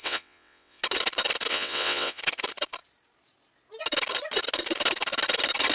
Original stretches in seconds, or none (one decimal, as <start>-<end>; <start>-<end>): 0.8-1.5; 2.2-5.7